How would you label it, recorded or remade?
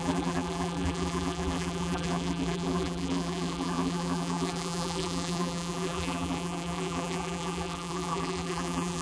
remade